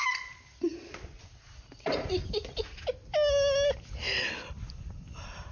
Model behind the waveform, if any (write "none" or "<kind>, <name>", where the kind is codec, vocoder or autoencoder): none